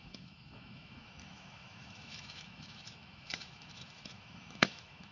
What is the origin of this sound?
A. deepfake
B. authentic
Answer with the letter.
A